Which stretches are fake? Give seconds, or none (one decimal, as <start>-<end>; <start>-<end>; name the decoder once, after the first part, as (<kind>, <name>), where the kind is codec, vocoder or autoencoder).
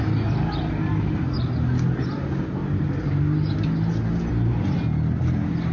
none